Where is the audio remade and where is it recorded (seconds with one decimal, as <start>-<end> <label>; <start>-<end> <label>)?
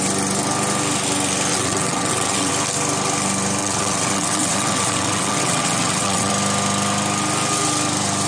0.0-1.5 recorded; 1.5-2.5 remade; 2.5-3.6 recorded; 3.6-6.3 remade; 6.3-8.3 recorded